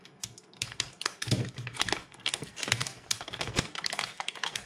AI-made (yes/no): yes